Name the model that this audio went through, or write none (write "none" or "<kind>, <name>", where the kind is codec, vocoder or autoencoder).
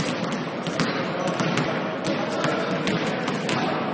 none